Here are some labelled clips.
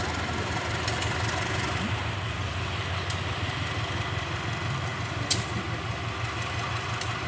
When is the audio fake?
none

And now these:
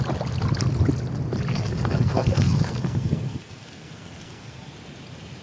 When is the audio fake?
1.5-4.7

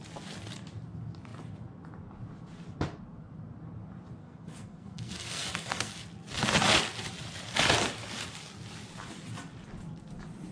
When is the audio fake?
4.2-5.9